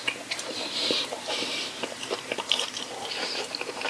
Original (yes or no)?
no